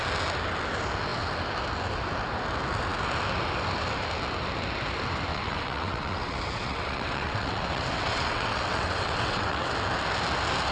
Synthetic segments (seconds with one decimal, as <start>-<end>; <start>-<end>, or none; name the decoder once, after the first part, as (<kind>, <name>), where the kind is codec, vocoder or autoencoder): 5.3-9.7 (vocoder, WaveNeXt)

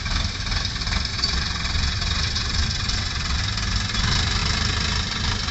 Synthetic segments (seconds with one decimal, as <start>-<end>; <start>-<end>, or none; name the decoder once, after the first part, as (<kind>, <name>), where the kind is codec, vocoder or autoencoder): 1.1-3.4 (vocoder, WaveNeXt)

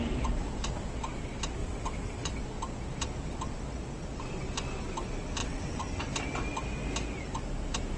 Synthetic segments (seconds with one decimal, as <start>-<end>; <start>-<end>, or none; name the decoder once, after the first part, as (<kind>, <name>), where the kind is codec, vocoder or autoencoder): 1.6-2.3 (vocoder, WaveNeXt); 5.4-6.0

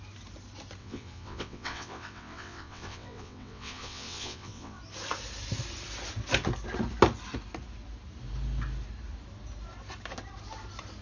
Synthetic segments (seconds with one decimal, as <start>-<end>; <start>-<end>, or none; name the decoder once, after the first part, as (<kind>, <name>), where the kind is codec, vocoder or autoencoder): 0.8-4.8 (vocoder, WaveNeXt)

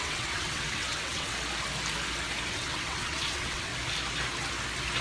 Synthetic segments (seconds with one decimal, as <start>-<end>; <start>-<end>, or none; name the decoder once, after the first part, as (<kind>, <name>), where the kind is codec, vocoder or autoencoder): 0.0-1.3 (vocoder, WaveNeXt); 2.5-3.7